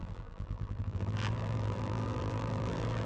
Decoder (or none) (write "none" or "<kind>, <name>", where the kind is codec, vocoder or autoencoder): vocoder, BigVGAN v2